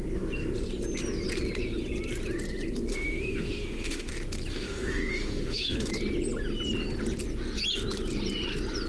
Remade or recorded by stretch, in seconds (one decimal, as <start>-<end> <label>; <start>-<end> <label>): 0.0-2.9 recorded; 2.9-4.1 remade; 4.1-4.5 recorded; 4.5-5.9 remade; 5.9-8.9 recorded